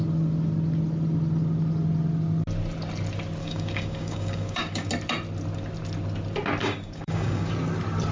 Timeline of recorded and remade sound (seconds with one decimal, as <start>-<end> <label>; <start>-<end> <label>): 0.0-3.4 recorded; 3.4-4.9 remade; 4.9-6.6 recorded; 6.6-7.5 remade; 7.5-8.1 recorded